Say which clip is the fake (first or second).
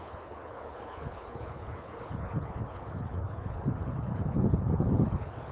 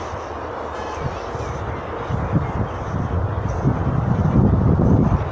first